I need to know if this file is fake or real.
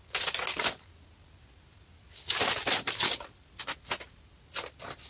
real